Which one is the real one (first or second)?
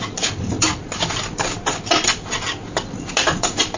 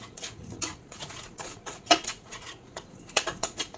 first